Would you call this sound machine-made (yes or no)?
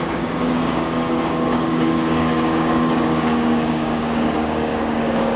yes